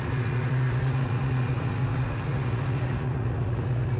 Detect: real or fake fake